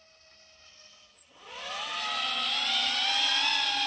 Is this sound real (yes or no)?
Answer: yes